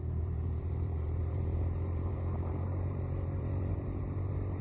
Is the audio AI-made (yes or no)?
yes